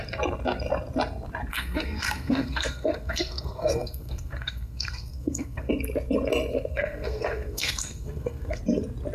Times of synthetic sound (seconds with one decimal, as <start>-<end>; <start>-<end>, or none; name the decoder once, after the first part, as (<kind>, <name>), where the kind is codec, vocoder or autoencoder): 1.5-5.7 (codec, SNAC); 6.7-8.6